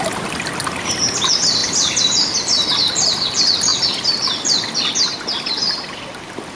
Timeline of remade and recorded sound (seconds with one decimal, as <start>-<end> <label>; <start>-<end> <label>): 0.0-6.6 recorded